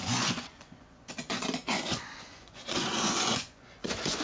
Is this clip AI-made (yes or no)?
yes